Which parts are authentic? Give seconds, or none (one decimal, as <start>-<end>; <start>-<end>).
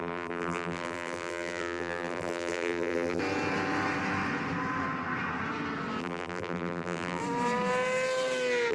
3.2-6.0; 7.2-8.7